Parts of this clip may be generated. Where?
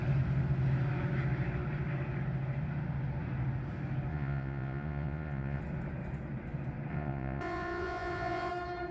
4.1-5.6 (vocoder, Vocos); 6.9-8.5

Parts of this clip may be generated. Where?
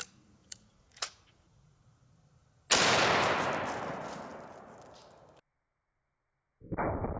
0.4-1.8 (vocoder, Vocos)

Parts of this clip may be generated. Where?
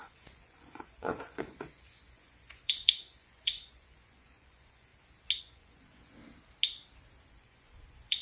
0.0-4.9 (vocoder, Vocos); 5.4-6.2; 7.3-8.2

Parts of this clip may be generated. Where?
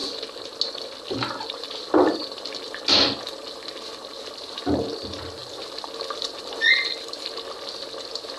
none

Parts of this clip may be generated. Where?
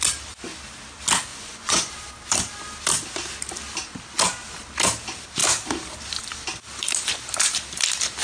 1.3-1.9 (vocoder, Vocos)